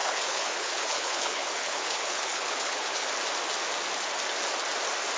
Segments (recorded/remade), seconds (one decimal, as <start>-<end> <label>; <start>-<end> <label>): 0.0-3.1 remade; 3.1-5.2 recorded